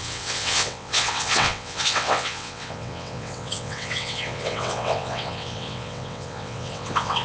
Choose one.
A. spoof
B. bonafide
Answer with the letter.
A